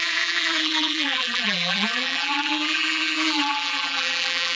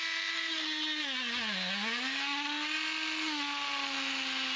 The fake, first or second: first